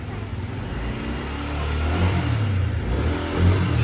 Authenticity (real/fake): real